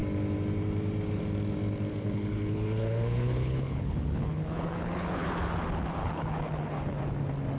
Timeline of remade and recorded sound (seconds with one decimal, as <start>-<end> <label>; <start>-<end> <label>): 0.0-1.9 recorded; 1.9-5.3 remade; 5.3-6.0 recorded; 6.0-7.0 remade; 7.0-7.6 recorded